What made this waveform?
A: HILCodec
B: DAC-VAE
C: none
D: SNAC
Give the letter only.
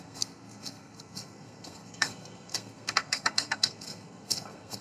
D